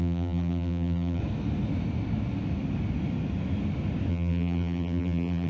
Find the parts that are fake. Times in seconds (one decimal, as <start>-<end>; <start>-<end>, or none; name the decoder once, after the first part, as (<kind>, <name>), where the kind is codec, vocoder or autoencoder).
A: 0.0-1.2 (vocoder, BigVGAN v2); 4.1-5.5